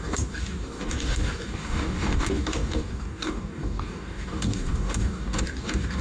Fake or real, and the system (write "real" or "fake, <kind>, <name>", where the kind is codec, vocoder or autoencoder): fake, codec, DAC